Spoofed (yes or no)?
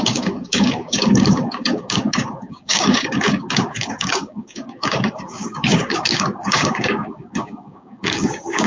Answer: yes